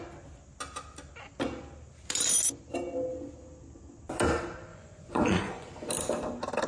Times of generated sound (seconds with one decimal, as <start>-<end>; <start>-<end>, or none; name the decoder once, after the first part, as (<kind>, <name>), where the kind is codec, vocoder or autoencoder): 4.7-5.9 (vocoder, Vocos)